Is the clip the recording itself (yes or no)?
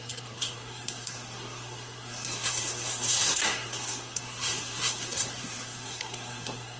no